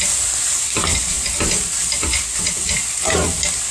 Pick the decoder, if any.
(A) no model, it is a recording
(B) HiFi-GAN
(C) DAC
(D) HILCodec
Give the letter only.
A